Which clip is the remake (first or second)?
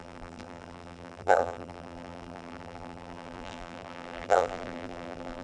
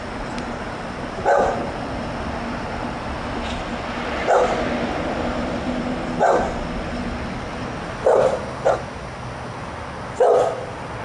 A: first